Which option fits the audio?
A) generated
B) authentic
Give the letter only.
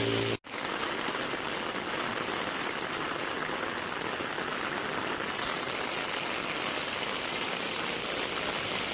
B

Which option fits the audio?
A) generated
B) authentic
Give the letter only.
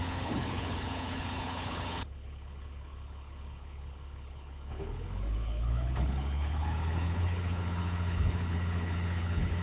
A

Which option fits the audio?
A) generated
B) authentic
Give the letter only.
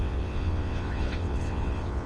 A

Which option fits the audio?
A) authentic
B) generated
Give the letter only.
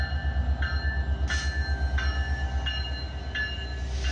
A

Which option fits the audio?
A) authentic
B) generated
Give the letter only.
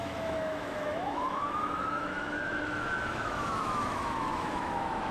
B